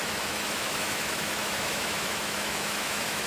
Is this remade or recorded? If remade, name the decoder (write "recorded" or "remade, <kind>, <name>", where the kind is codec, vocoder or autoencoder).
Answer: remade, autoencoder, DAC-VAE